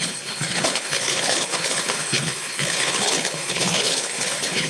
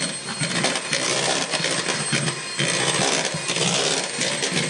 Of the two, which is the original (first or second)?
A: second